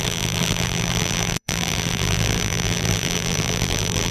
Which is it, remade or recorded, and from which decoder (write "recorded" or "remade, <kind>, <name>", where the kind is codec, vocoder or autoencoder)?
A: remade, vocoder, BigVGAN v2